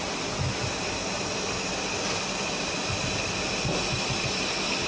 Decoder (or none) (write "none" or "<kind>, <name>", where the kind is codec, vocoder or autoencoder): none